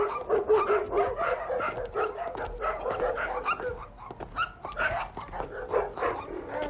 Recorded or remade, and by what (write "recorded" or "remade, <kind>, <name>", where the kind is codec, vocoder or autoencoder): recorded